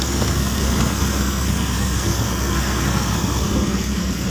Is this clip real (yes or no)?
no